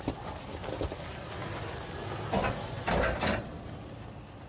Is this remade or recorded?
recorded